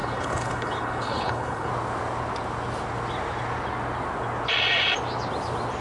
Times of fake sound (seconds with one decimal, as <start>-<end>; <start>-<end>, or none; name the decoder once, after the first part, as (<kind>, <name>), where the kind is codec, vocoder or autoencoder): 0.0-1.7 (codec, HILCodec)

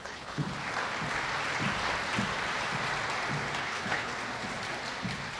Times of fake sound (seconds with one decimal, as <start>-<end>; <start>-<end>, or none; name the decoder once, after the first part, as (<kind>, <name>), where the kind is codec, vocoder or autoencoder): 0.0-0.4 (codec, HILCodec); 3.6-4.1

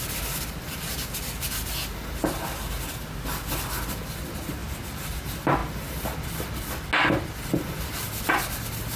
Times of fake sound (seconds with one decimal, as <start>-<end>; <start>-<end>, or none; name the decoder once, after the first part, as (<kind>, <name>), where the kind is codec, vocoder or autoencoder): none

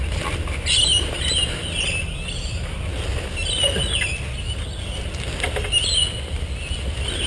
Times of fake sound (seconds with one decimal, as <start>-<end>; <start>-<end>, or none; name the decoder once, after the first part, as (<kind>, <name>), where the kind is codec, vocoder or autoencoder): none

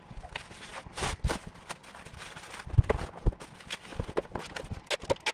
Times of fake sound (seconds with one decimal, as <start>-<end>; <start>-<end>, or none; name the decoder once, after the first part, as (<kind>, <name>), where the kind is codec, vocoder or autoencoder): none

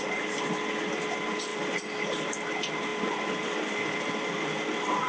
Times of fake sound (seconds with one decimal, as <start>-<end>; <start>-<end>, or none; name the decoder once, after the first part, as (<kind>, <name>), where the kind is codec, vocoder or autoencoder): 1.5-2.5 (vocoder, BigVGAN v2); 2.9-5.1

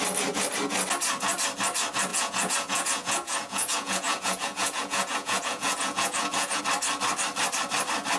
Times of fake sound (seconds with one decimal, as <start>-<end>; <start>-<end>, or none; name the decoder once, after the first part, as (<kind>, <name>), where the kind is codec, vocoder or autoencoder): 2.1-6.6 (vocoder, Vocos)

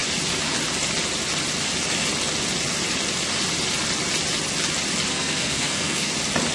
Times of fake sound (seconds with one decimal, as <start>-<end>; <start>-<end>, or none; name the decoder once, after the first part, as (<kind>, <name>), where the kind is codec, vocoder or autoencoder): 5.1-6.1 (codec, SNAC)